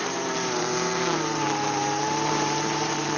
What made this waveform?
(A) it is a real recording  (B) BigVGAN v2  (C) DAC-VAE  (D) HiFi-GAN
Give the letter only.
B